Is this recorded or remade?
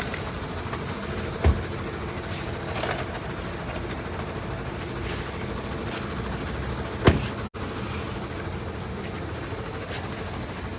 recorded